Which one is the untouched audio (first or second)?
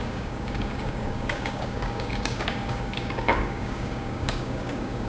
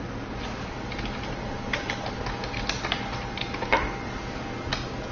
second